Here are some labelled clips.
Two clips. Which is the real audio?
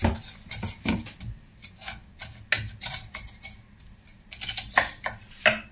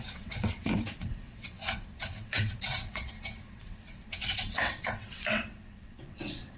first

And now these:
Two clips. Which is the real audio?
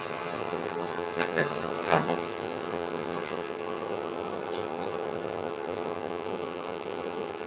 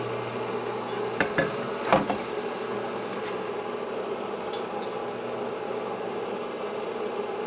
second